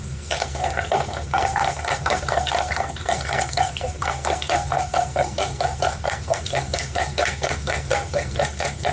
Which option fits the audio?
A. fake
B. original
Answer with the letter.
A